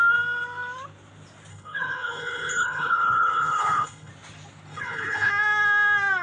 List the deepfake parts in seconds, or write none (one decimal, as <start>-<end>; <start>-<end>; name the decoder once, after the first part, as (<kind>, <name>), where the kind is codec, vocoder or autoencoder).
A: 1.5-4.1 (codec, HILCodec); 4.7-5.3